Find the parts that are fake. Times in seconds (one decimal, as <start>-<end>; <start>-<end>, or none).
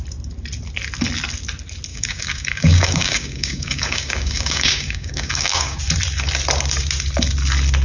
1.9-5.8